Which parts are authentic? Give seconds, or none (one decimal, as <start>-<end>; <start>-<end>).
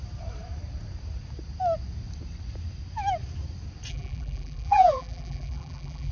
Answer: 0.0-3.9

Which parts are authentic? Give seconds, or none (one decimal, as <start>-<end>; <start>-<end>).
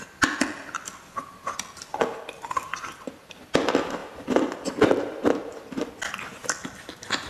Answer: 0.0-4.0; 5.8-7.3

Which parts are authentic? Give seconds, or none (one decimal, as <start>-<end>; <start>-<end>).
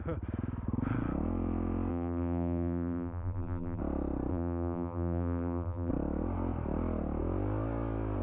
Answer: 0.0-1.9; 3.8-4.3; 5.9-8.2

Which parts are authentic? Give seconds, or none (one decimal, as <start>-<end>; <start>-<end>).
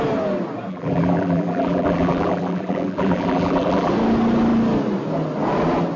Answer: 0.0-0.7; 3.9-6.0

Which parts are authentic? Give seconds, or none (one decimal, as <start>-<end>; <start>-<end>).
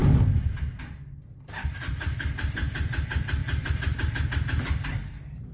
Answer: 0.0-1.9; 3.4-5.5